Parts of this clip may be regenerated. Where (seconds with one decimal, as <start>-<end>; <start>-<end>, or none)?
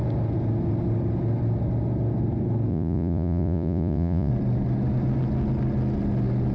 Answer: 2.7-4.3